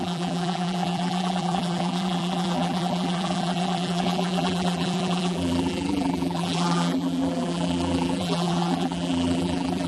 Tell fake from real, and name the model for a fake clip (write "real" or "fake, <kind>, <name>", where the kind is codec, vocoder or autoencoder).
fake, vocoder, BigVGAN v2